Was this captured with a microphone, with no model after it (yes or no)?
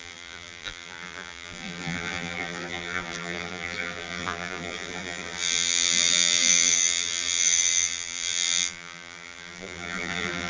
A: no